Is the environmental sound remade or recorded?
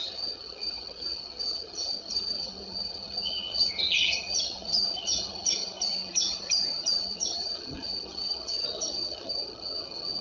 remade